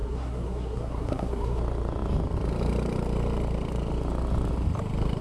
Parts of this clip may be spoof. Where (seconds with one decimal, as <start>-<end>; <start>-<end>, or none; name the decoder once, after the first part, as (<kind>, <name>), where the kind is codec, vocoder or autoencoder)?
0.0-1.6 (codec, SNAC)